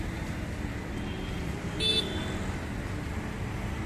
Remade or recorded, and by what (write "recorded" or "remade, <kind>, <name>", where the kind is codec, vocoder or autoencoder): recorded